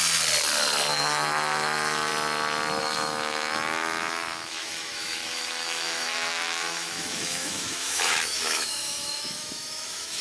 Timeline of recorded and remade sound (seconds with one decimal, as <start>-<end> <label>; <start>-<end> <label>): 0.0-0.9 recorded; 0.9-2.1 remade; 2.1-2.8 recorded; 2.8-10.2 remade

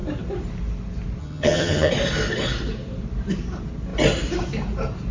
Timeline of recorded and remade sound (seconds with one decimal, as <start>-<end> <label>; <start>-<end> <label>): 0.0-1.2 recorded; 1.2-1.9 remade; 1.9-5.1 recorded

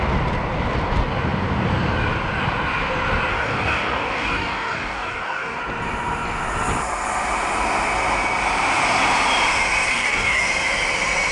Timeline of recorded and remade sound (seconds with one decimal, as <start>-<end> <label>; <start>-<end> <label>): 0.0-3.3 recorded; 3.3-5.6 remade; 5.6-9.9 recorded; 9.9-10.5 remade; 10.5-11.3 recorded

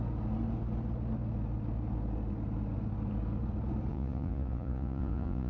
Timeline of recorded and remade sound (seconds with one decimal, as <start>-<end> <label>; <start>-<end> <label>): 0.0-3.9 recorded; 3.9-5.5 remade

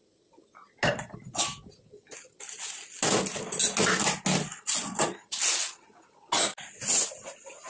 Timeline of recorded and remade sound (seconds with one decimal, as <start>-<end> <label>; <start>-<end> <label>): 0.0-7.7 recorded

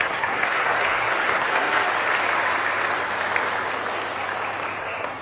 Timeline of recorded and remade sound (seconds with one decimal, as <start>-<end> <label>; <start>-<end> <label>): 0.0-1.8 remade; 1.8-4.8 recorded; 4.8-5.2 remade

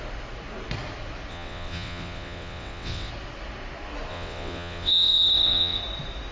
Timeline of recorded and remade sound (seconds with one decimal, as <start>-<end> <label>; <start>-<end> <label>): 0.0-1.3 recorded; 1.3-3.1 remade; 3.1-4.1 recorded; 4.1-5.8 remade; 5.8-6.3 recorded